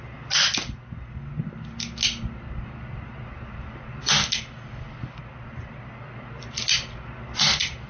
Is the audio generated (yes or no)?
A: no